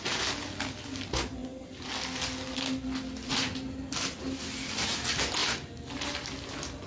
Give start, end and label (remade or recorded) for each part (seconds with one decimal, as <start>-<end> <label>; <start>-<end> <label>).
0.0-6.9 recorded